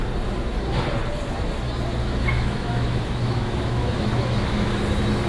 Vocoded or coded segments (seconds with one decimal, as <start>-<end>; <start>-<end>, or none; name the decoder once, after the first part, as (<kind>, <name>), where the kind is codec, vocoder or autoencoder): 2.0-4.8 (autoencoder, DAC-VAE)